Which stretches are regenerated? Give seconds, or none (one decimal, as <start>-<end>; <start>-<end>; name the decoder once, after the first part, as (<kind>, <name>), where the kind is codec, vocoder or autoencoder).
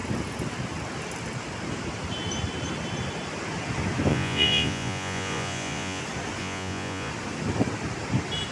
4.1-6.0 (vocoder, Vocos); 6.4-7.1